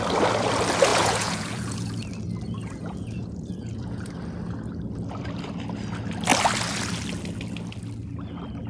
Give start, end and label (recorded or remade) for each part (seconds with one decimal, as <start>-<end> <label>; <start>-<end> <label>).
0.0-0.9 recorded; 0.9-2.0 remade; 2.0-2.6 recorded; 2.6-4.1 remade; 4.1-8.7 recorded